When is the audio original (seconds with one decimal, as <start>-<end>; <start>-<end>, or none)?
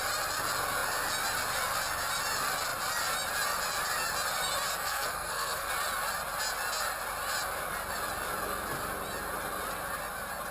0.0-4.7; 5.7-10.5